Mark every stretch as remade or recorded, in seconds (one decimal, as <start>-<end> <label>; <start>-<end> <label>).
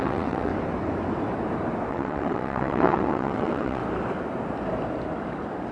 0.0-0.5 remade; 0.5-1.9 recorded; 1.9-3.8 remade; 3.8-5.7 recorded